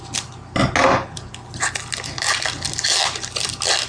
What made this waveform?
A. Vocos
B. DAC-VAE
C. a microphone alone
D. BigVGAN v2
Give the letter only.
C